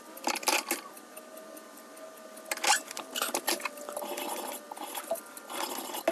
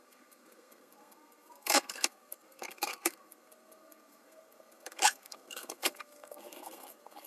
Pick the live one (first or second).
first